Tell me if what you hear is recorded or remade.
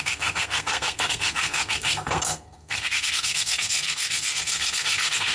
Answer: remade